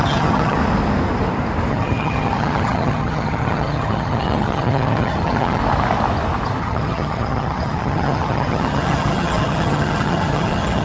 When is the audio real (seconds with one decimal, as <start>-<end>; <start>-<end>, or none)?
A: 0.6-1.7; 5.6-6.6